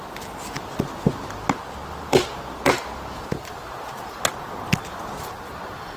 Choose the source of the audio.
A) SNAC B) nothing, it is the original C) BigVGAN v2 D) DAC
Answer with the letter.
B